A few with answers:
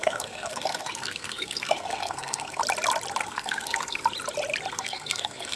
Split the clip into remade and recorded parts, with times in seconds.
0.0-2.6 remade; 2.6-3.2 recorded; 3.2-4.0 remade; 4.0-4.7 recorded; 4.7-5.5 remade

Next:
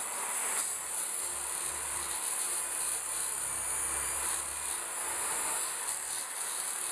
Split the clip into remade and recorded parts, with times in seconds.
0.0-5.1 recorded; 5.1-5.8 remade; 5.8-6.9 recorded

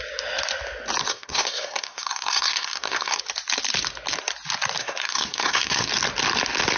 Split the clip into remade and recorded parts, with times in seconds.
0.0-1.1 recorded; 1.1-3.2 remade; 3.2-4.8 recorded; 4.8-5.9 remade; 5.9-6.8 recorded